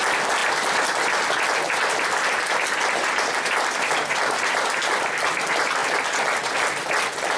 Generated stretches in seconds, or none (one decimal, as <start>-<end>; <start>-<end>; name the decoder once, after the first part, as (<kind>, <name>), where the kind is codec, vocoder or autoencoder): none

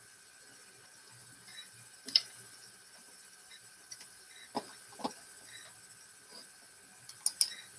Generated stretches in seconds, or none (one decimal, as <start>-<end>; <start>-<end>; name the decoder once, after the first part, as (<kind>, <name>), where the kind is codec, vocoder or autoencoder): 1.2-4.3 (vocoder, BigVGAN v2)